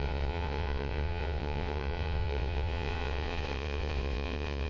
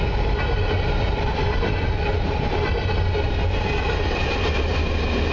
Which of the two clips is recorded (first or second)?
second